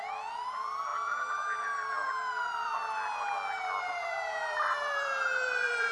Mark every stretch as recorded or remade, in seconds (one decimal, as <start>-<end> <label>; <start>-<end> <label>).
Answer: 0.0-2.8 remade; 2.8-3.6 recorded; 3.6-5.9 remade